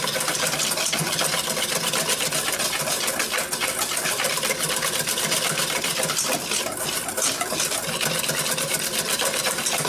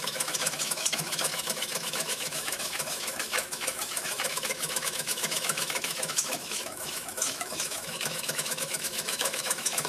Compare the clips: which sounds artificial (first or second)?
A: second